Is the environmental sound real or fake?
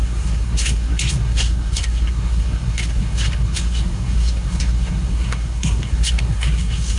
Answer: fake